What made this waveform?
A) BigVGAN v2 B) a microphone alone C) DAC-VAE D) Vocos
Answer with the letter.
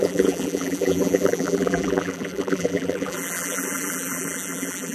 A